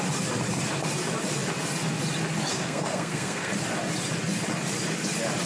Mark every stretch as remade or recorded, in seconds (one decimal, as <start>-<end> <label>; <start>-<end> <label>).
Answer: 0.0-2.5 recorded; 2.5-3.5 remade; 3.5-5.5 recorded